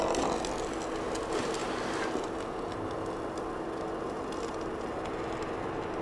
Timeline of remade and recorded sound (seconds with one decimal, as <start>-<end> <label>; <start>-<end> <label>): 0.0-6.0 recorded